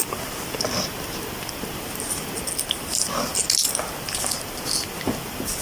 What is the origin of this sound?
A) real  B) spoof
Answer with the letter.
A